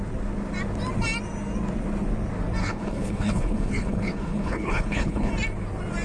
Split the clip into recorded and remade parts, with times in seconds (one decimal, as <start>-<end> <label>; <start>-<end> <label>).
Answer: 0.0-2.6 recorded; 2.6-5.3 remade; 5.3-6.0 recorded